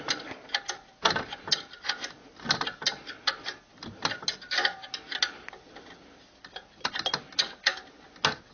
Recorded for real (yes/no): yes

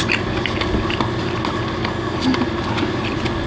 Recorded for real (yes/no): yes